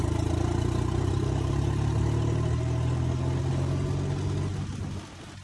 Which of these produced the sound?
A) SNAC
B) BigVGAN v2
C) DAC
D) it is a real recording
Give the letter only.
D